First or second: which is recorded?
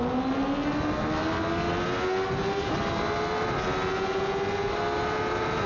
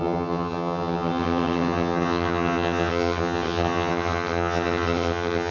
first